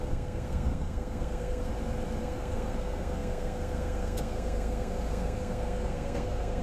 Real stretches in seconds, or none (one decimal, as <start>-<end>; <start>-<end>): 1.7-2.2